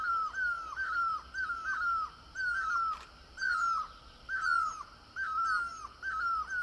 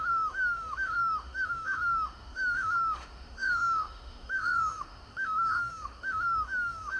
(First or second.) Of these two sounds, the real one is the first